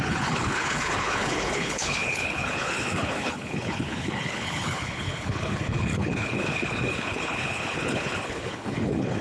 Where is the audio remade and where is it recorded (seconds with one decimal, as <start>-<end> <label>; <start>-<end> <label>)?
0.0-9.2 remade